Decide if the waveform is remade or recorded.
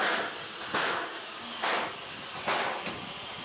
recorded